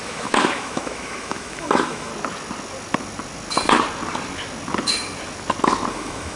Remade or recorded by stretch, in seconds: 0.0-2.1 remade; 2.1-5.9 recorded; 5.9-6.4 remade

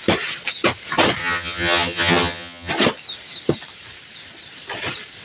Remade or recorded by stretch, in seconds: 0.0-1.2 recorded; 1.2-2.7 remade; 2.7-5.2 recorded